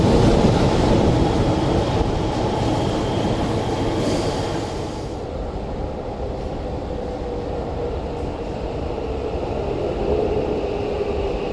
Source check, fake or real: real